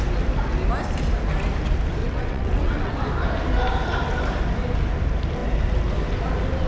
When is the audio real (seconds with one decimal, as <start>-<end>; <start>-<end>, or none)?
0.0-2.0; 2.9-6.7